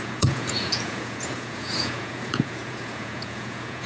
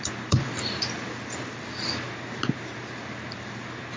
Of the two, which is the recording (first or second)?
second